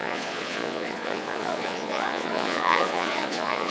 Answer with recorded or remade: remade